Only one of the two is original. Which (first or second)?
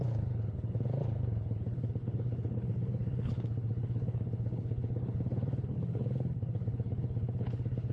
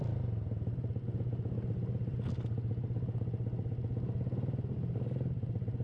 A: second